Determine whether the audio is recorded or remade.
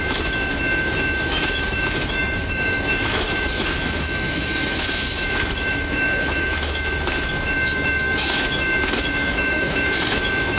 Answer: remade